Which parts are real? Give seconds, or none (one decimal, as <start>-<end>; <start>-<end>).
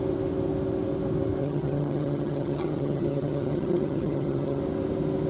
0.0-1.4; 4.6-5.3